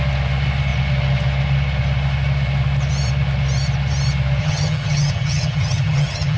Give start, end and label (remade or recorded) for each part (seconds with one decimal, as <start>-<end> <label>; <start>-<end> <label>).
0.0-4.4 recorded; 4.4-6.4 remade